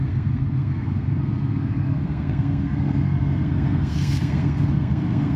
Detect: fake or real fake